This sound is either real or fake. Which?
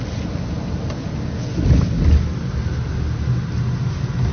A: real